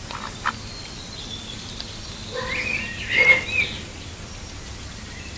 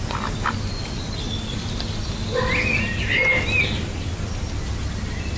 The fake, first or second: first